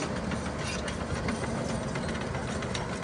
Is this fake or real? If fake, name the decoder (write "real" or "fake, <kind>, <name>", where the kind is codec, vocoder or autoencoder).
real